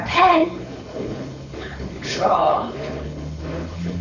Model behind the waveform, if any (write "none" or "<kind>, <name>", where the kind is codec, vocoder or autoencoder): codec, HILCodec